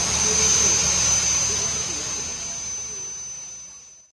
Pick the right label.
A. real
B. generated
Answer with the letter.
A